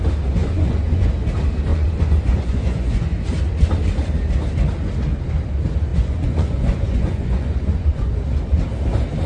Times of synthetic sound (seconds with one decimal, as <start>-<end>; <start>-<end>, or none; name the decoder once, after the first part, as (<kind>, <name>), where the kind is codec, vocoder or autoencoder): 0.4-1.1 (vocoder, Vocos); 1.7-3.2; 5.9-8.1